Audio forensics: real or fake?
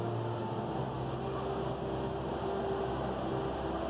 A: real